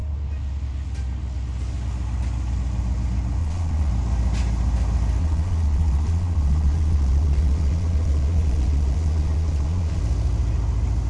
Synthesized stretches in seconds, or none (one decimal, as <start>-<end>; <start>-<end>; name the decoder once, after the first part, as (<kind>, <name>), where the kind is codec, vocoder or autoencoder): 3.4-3.9 (vocoder, Vocos); 5.2-10.0